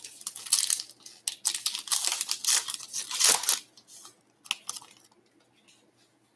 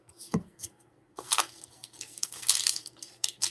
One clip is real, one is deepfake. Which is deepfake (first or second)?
second